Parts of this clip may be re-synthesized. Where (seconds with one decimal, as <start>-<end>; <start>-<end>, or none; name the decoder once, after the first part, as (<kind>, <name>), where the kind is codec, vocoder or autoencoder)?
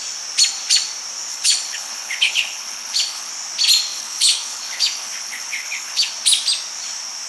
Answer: 1.3-3.3 (codec, HILCodec); 3.9-6.1